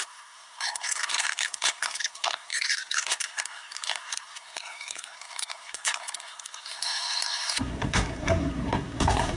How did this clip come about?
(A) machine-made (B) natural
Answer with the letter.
A